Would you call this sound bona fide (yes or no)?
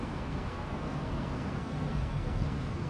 no